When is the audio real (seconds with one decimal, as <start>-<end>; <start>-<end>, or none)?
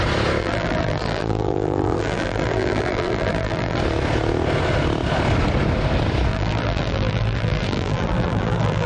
0.0-0.4; 3.8-6.3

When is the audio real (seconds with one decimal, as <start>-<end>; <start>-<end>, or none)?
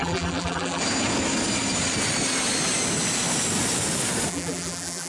0.8-4.3